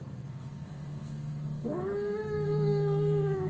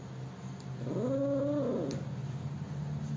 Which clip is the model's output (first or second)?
first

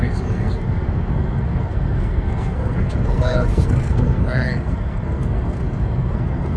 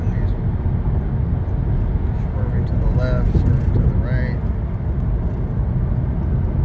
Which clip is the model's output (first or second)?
first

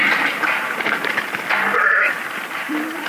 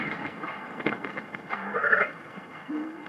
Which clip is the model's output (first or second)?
second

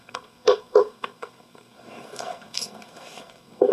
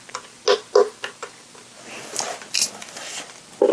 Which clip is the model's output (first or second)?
first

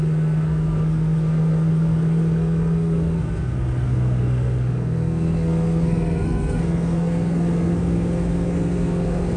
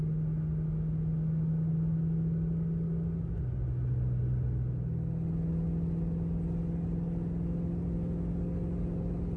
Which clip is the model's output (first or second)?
first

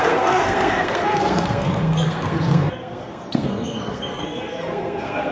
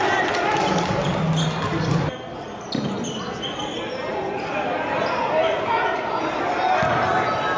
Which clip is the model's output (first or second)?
first